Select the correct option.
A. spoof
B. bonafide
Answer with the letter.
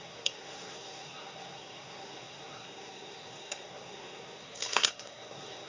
A